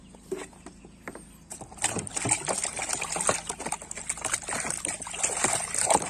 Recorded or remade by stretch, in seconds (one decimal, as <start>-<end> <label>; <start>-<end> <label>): 0.0-6.1 recorded